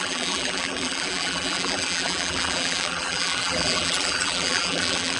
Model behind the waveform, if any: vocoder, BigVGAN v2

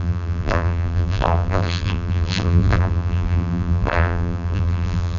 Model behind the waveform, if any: vocoder, BigVGAN v2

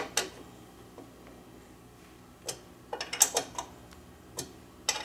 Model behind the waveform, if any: none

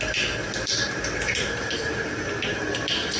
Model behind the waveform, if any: vocoder, BigVGAN v2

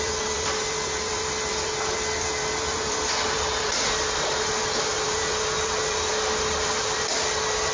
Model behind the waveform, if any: vocoder, BigVGAN v2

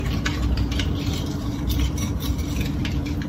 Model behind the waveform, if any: vocoder, BigVGAN v2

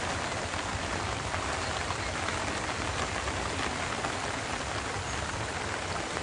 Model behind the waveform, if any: none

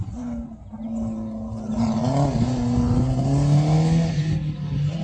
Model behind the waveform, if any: none